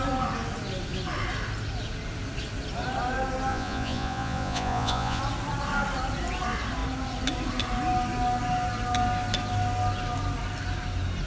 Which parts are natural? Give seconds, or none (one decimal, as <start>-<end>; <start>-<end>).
0.0-3.5; 5.2-11.3

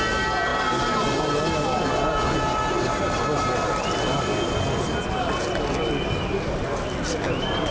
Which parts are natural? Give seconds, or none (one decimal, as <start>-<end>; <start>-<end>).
0.0-7.7